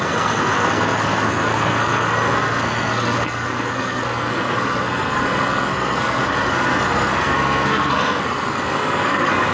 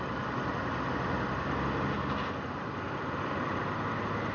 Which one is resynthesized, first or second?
first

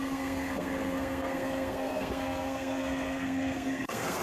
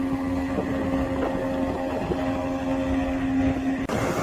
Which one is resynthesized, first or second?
first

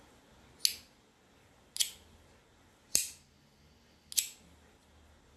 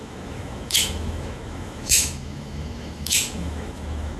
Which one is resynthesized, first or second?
second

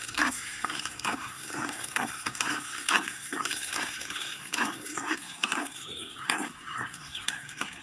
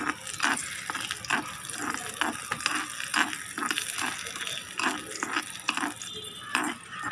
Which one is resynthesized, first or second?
first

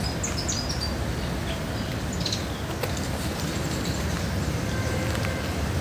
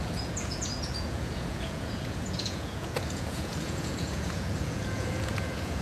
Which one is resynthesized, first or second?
second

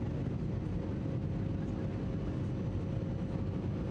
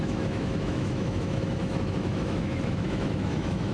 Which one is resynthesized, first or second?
second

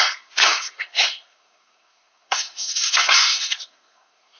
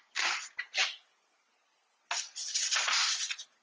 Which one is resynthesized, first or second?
first